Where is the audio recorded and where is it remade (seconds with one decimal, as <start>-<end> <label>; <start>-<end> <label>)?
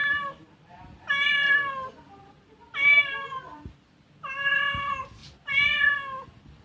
0.0-3.7 remade; 3.7-6.6 recorded